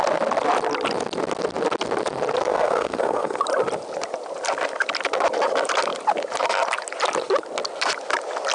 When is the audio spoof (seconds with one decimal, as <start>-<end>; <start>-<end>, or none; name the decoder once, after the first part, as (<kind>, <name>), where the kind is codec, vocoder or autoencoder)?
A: 2.4-3.4 (codec, SNAC)